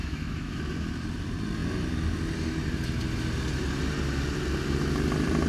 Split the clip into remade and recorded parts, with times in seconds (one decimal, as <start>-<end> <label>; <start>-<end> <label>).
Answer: 0.0-0.6 remade; 0.6-5.5 recorded